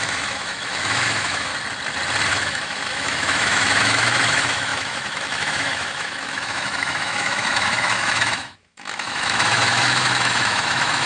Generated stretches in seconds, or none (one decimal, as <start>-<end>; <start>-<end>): 0.0-1.5; 2.3-11.1